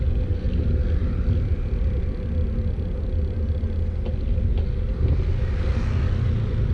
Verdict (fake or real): real